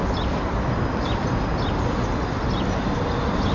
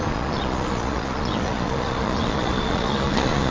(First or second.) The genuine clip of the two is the first